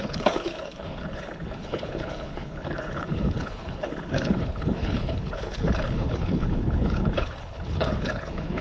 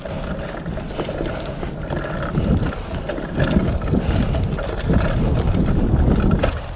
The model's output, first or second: first